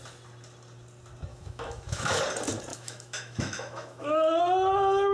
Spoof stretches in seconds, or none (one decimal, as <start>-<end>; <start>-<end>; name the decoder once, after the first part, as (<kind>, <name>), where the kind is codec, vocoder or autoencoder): 1.3-2.2 (autoencoder, DAC-VAE); 2.7-4.4